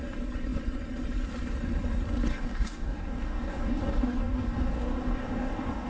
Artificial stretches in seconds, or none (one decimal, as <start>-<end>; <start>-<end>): 2.3-5.9